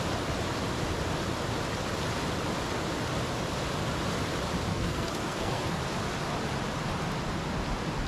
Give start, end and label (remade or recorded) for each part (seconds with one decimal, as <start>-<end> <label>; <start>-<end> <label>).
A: 0.0-4.7 recorded; 4.7-5.8 remade; 5.8-8.1 recorded